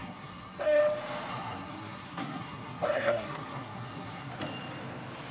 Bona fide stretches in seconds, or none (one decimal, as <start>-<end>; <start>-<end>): 0.8-1.3; 4.3-5.3